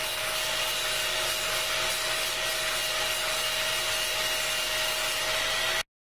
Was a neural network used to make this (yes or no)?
no